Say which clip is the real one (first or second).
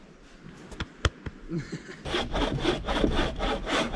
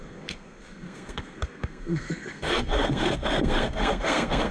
first